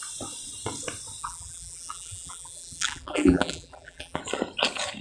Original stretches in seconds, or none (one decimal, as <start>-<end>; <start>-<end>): 0.0-1.2; 4.2-5.0